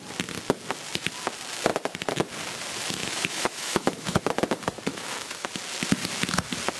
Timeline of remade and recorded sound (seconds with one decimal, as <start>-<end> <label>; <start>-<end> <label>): 0.0-3.0 recorded; 3.0-4.2 remade; 4.2-4.9 recorded; 4.9-5.5 remade; 5.5-6.8 recorded